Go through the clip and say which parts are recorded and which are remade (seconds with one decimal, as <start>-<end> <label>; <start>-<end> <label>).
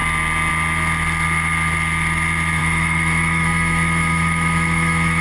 0.0-2.6 recorded; 2.6-5.2 remade